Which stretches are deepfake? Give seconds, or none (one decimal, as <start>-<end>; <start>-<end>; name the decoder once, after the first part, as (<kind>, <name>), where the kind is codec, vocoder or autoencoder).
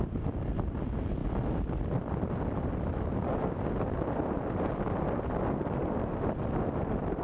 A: none